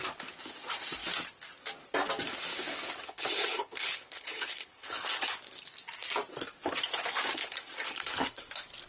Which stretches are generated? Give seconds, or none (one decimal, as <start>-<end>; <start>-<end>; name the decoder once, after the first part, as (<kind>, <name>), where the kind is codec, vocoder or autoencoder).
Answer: 2.5-5.2 (codec, HILCodec); 7.3-8.5